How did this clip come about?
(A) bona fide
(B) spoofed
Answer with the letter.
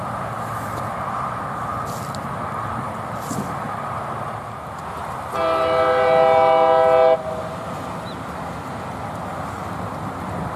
A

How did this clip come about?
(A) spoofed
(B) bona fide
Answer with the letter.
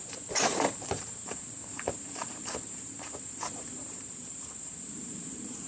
A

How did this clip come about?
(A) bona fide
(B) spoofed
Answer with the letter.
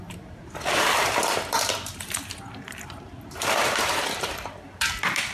B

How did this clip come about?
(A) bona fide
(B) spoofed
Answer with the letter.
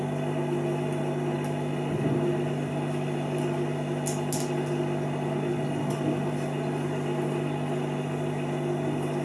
A